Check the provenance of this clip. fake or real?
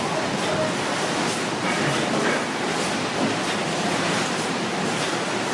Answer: real